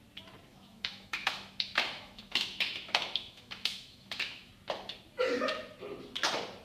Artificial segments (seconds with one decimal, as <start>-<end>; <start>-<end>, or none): 0.5-4.5